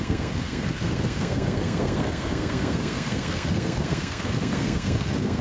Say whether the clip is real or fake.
fake